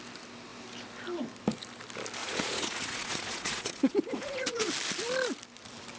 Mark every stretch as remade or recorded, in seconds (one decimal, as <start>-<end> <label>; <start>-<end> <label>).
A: 0.0-2.2 recorded; 2.2-4.7 remade; 4.7-6.0 recorded